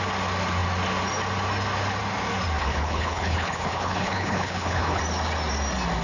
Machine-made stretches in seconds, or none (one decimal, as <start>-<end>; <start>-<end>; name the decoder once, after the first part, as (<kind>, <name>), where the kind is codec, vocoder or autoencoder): 2.6-5.0 (codec, HILCodec)